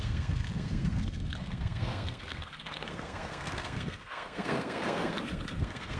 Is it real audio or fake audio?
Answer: fake